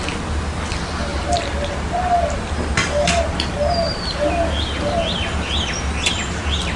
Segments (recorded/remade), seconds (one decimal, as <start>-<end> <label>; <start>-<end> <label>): 0.0-6.8 recorded